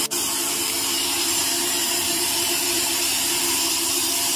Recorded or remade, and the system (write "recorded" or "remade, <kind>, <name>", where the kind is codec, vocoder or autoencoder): remade, vocoder, BigVGAN v2